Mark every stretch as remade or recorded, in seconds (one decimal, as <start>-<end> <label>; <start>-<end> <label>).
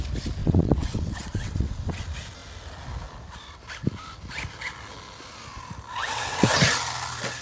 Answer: 0.0-0.4 recorded; 0.4-2.0 remade; 2.0-6.0 recorded; 6.0-6.6 remade; 6.6-7.4 recorded